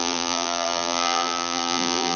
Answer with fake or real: fake